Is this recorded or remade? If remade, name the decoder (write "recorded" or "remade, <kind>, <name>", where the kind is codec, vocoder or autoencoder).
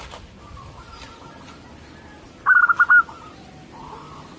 recorded